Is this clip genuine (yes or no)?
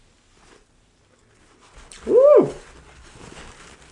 yes